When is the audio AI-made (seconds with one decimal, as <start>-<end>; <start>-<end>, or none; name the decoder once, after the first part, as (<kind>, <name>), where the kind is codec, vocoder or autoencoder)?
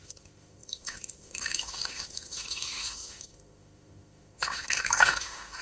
0.0-5.6 (autoencoder, DAC-VAE)